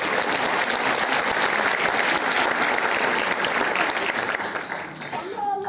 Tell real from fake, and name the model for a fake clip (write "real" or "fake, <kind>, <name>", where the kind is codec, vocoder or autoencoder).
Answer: real